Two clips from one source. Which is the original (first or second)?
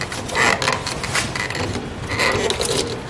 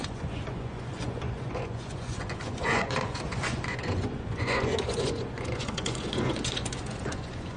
first